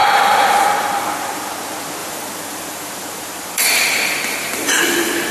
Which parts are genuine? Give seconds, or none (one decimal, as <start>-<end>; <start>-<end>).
0.0-2.0